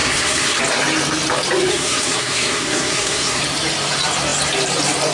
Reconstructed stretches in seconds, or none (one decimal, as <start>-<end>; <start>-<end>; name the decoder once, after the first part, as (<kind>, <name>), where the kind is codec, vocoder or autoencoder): 0.0-0.6 (codec, SNAC); 1.7-3.4